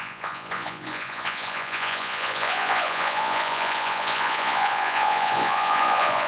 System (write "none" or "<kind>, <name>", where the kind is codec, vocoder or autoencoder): vocoder, Vocos